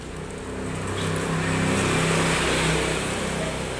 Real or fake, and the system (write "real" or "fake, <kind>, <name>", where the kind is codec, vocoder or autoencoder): real